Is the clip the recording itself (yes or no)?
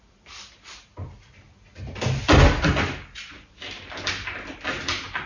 yes